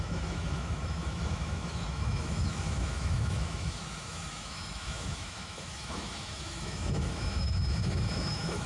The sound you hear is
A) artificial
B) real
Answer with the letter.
A